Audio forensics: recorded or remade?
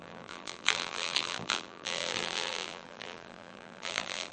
remade